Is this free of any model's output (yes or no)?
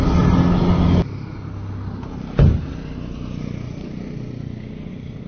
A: yes